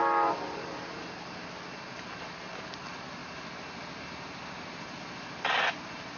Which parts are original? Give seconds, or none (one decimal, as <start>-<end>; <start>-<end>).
0.0-6.2